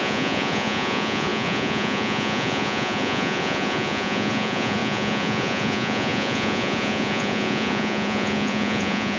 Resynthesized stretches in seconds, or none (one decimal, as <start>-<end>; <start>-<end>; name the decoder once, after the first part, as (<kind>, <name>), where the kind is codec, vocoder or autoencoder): 0.0-9.2 (vocoder, Vocos)